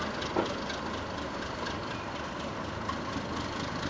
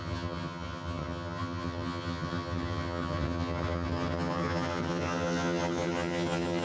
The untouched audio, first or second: first